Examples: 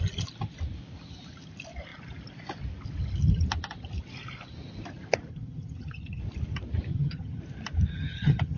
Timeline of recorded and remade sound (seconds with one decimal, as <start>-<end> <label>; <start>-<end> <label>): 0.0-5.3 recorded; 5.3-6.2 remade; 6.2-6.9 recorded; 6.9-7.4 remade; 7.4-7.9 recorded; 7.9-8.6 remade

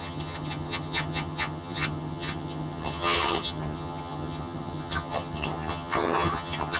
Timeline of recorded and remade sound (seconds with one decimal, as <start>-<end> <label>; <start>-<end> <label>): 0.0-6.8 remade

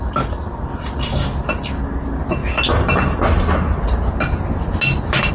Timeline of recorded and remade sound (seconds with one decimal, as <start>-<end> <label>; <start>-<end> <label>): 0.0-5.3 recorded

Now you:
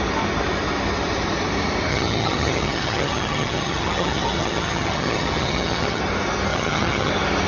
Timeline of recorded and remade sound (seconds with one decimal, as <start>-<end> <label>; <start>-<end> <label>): 0.0-1.9 recorded; 1.9-6.0 remade; 6.0-6.5 recorded; 6.5-7.1 remade; 7.1-7.5 recorded

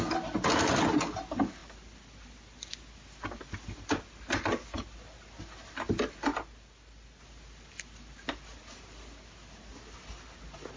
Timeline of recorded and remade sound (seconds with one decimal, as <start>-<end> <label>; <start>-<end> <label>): 0.0-10.8 recorded

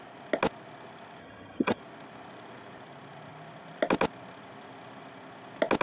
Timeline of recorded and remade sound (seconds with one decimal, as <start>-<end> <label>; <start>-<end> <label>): 0.0-1.2 recorded; 1.2-1.8 remade; 1.8-5.8 recorded